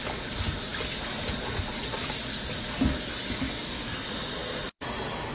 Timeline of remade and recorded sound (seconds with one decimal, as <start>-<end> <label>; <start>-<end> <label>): 0.0-5.3 recorded